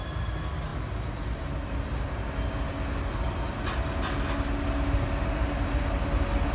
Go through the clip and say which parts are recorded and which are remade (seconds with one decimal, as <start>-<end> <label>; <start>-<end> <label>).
0.0-6.5 recorded